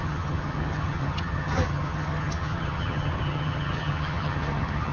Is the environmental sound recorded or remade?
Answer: remade